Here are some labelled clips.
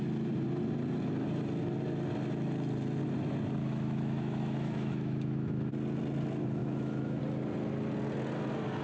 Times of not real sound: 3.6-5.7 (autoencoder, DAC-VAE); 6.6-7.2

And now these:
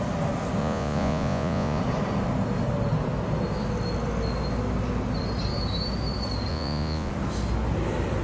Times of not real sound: 0.6-1.8 (vocoder, Vocos); 6.5-7.1